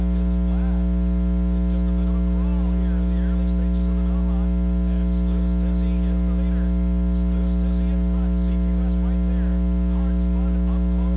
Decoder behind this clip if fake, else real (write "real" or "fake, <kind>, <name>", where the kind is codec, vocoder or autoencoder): real